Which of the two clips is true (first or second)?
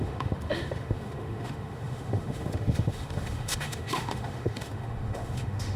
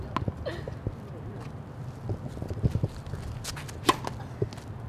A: second